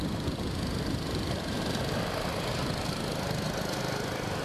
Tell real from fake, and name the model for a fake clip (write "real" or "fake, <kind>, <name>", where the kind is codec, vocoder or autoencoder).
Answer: real